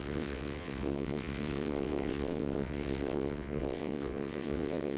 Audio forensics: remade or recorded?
remade